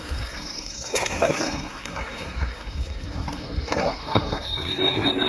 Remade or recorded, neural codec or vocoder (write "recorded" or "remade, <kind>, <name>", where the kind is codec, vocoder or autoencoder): remade, codec, SNAC